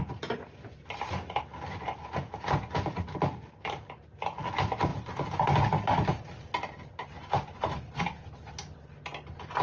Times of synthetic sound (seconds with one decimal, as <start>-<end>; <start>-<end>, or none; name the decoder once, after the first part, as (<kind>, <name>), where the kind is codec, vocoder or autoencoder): none